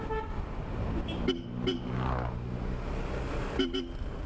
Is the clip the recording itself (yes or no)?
yes